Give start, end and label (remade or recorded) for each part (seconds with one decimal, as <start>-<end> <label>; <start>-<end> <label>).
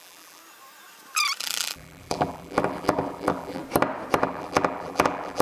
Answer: 0.0-0.4 remade; 0.4-1.4 recorded; 1.4-3.6 remade; 3.6-4.2 recorded; 4.2-5.4 remade